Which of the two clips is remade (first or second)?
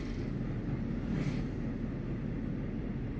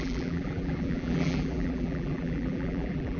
second